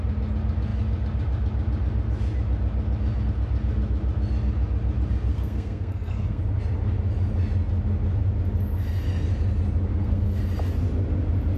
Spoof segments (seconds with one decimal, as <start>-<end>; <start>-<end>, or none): 5.3-6.4; 9.9-10.4